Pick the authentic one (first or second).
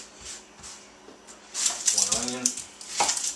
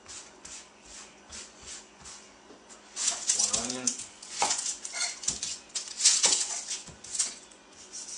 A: first